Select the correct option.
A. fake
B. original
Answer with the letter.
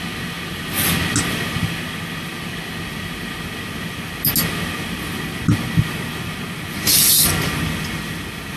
B